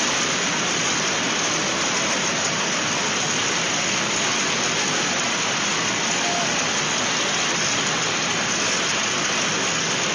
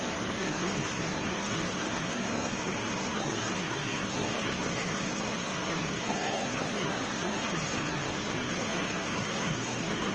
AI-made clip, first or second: second